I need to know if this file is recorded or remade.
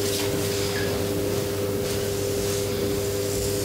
recorded